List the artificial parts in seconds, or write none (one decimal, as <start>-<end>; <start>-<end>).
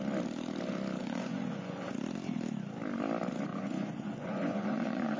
1.0-1.9; 3.5-5.2